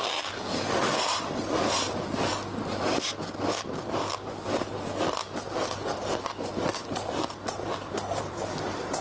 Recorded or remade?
recorded